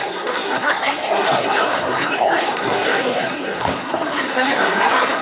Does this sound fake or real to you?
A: fake